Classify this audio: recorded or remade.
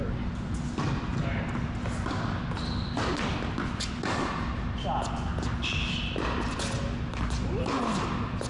recorded